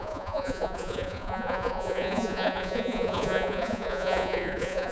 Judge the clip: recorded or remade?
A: remade